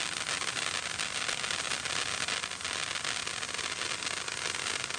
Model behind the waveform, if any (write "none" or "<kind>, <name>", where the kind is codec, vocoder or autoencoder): none